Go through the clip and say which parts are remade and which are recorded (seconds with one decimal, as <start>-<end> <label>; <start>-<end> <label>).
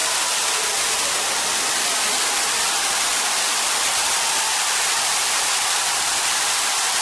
0.0-2.7 recorded; 2.7-3.1 remade; 3.1-5.2 recorded; 5.2-7.0 remade